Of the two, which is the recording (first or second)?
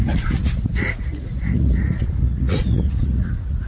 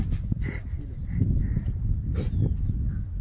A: second